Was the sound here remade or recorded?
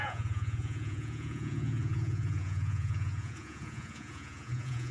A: remade